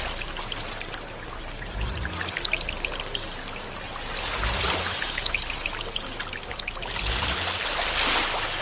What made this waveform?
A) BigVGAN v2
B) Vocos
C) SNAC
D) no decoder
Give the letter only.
D